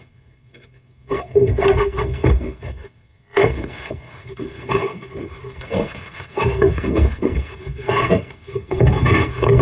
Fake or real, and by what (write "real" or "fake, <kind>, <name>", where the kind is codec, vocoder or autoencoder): fake, codec, SNAC